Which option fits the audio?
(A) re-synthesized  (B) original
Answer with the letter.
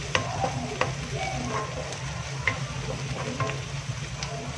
B